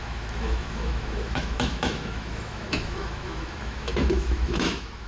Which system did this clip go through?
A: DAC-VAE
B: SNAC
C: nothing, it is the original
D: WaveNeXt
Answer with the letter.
A